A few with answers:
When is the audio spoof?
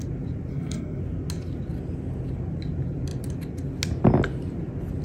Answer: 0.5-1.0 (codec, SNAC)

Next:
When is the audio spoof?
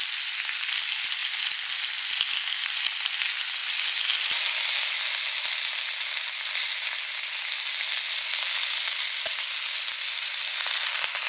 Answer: none